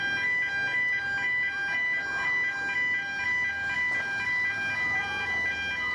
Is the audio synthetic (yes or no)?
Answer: no